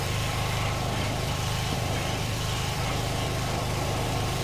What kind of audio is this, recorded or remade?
remade